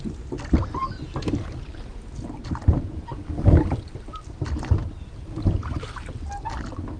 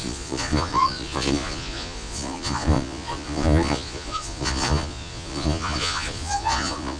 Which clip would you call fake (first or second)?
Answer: second